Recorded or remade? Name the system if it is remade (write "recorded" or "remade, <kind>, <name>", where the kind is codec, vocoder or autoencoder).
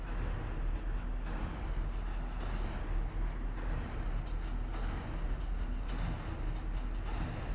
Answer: recorded